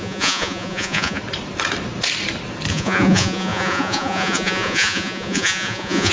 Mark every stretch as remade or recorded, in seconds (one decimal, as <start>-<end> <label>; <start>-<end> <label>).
0.0-1.2 remade; 1.2-2.7 recorded; 2.7-6.1 remade